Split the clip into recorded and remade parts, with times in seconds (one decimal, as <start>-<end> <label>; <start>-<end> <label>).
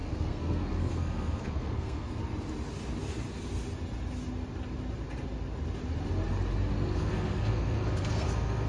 0.0-2.2 remade; 2.2-6.9 recorded; 6.9-8.7 remade